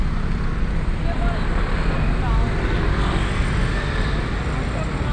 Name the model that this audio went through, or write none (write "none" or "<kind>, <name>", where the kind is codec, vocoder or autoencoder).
none